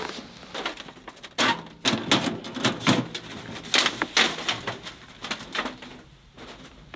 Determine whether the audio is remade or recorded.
recorded